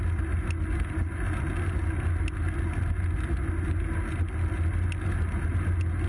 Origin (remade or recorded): recorded